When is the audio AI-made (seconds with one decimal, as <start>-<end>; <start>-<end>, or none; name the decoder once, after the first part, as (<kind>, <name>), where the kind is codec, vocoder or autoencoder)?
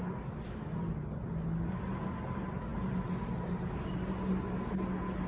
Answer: none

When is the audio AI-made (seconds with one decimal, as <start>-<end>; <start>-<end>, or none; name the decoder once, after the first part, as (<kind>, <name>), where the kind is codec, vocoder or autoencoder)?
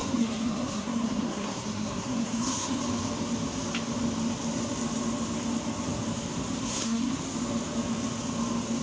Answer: 0.0-2.8 (codec, SNAC); 6.6-7.2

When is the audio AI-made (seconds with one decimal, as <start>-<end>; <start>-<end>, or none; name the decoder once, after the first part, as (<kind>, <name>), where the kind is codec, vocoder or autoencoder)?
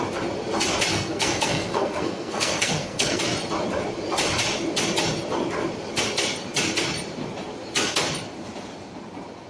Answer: 0.9-3.2 (codec, SNAC)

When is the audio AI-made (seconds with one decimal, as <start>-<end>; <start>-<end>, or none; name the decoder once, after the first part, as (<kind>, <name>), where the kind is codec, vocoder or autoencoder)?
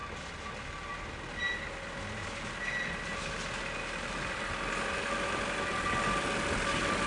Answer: none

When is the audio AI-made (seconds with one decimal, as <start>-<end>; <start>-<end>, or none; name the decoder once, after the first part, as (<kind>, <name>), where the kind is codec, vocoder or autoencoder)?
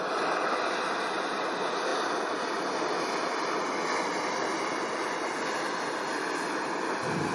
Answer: none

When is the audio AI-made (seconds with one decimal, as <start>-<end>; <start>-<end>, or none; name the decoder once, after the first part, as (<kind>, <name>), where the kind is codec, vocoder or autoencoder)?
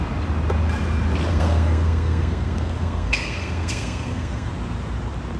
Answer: 1.3-4.5 (codec, SNAC)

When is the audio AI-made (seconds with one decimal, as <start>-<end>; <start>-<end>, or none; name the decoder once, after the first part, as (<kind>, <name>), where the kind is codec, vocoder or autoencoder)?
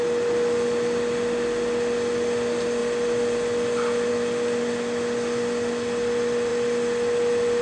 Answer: none